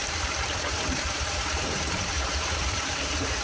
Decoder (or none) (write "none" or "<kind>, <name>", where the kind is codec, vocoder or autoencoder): vocoder, BigVGAN v2